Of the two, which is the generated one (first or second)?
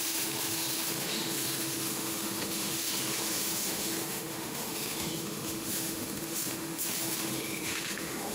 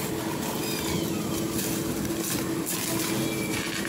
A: first